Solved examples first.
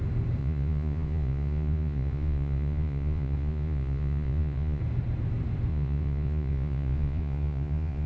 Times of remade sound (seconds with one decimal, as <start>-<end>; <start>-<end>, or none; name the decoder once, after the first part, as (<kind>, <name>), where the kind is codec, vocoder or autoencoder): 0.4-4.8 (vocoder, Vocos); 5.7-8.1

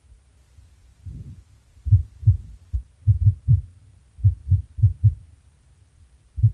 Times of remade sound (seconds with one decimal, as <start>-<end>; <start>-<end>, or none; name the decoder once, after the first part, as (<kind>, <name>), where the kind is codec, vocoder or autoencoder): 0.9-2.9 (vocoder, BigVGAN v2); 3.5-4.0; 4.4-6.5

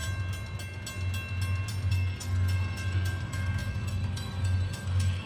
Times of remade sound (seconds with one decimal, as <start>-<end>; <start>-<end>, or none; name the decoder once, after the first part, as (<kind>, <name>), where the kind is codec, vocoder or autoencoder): 1.9-5.3 (codec, SNAC)

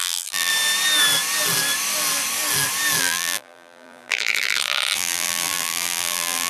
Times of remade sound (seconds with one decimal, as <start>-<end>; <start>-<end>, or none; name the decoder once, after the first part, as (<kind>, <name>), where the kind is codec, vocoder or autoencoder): 0.0-0.5 (vocoder, BigVGAN v2); 3.0-6.5

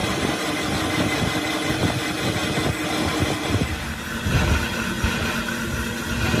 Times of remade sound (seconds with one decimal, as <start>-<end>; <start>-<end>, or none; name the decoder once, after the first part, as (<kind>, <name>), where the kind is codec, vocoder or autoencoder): 0.0-0.6 (vocoder, BigVGAN v2)